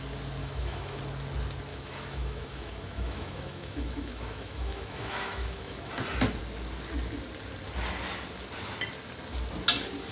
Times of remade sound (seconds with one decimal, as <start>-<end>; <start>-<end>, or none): 0.4-1.0; 1.7-5.9